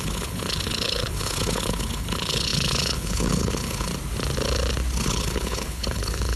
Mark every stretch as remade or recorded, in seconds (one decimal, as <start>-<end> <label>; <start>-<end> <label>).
0.0-3.9 remade; 3.9-5.0 recorded; 5.0-6.4 remade